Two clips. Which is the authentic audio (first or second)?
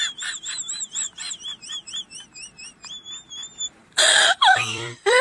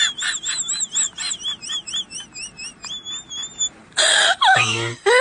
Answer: second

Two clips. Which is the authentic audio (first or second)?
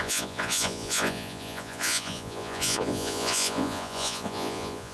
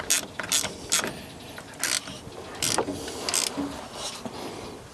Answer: second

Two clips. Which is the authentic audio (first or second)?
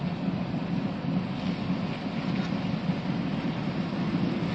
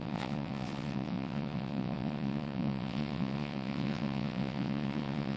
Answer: first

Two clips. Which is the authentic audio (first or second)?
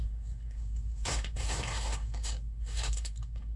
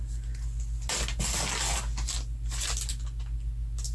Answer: second